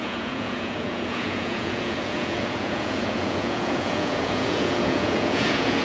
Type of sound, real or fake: fake